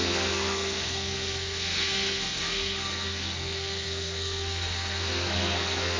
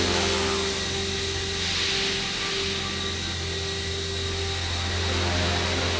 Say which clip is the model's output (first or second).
first